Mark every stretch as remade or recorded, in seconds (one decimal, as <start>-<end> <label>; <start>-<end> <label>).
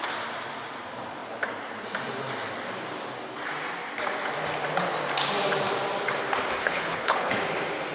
0.0-6.6 recorded; 6.6-7.3 remade; 7.3-7.9 recorded